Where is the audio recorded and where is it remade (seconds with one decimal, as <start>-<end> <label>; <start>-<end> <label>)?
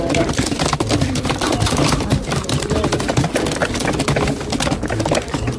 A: 0.0-3.6 remade; 3.6-5.1 recorded; 5.1-5.6 remade